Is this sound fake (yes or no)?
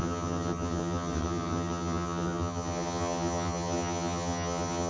yes